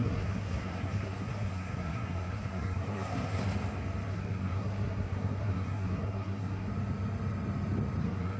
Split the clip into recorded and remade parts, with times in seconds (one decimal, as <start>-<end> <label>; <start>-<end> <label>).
0.0-3.4 remade; 3.4-4.1 recorded; 4.1-6.7 remade; 6.7-8.0 recorded; 8.0-8.4 remade